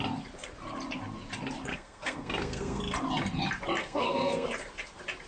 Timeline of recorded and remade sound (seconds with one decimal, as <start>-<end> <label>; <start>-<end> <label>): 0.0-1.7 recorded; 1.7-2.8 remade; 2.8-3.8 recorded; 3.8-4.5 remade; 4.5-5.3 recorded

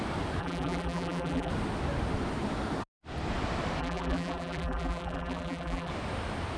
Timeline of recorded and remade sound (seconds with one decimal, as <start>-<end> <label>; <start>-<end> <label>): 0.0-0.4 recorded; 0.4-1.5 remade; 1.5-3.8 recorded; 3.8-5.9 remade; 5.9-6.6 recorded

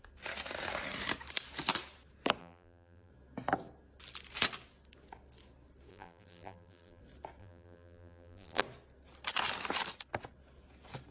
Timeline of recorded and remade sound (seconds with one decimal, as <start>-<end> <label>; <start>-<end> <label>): 0.0-2.4 recorded; 2.4-3.1 remade; 3.1-5.9 recorded; 5.9-7.0 remade; 7.0-7.4 recorded; 7.4-8.6 remade; 8.6-11.1 recorded

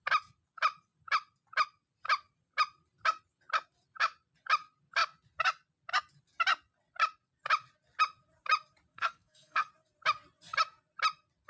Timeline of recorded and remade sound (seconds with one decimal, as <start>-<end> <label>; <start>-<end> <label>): 0.0-8.9 recorded; 8.9-9.7 remade; 9.7-11.5 recorded

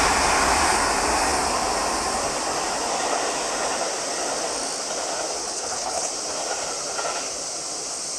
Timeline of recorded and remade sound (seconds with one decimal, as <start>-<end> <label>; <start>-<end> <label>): 0.0-5.4 recorded; 5.4-6.1 remade; 6.1-8.2 recorded

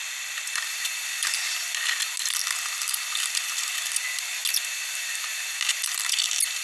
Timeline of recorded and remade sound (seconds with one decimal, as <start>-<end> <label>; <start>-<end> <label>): 0.0-6.6 recorded

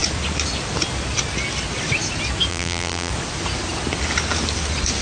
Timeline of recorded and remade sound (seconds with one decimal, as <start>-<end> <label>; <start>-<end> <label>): 0.0-2.5 recorded; 2.5-3.1 remade; 3.1-5.0 recorded

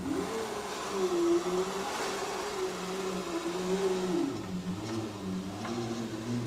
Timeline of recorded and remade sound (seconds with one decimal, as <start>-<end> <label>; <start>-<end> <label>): 0.0-6.5 recorded